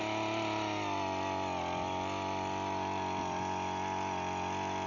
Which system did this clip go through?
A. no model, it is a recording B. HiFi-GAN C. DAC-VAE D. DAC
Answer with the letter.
A